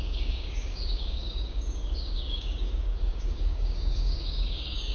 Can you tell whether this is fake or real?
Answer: fake